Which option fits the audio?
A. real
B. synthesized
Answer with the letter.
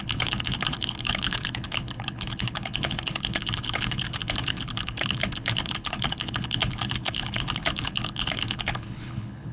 B